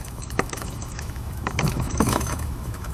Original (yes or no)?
no